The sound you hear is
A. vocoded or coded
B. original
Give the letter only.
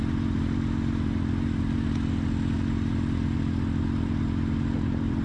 B